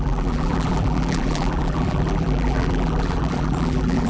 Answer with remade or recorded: remade